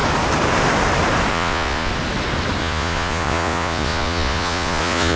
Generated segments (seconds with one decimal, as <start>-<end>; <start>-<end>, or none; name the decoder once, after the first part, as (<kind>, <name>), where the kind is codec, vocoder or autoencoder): 1.3-1.9 (vocoder, Vocos); 2.6-5.2